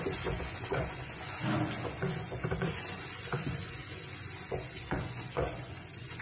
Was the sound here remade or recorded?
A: remade